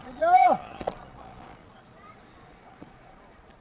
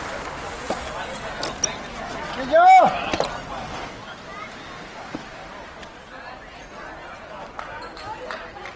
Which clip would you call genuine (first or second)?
second